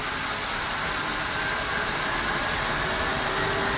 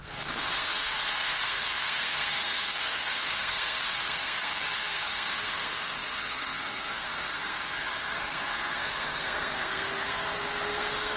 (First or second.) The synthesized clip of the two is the second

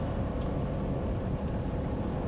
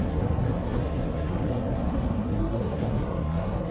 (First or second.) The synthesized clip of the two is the second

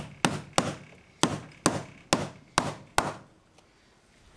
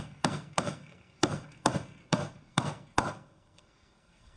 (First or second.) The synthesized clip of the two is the second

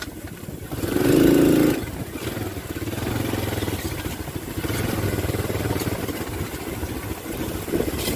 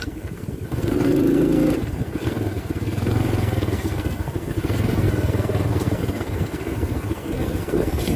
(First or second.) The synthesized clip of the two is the second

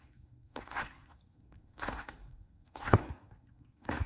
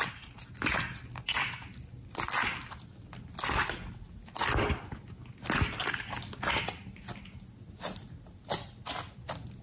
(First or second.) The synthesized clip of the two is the first